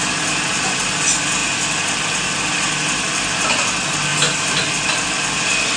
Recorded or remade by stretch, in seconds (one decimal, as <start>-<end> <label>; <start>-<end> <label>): 0.0-5.8 recorded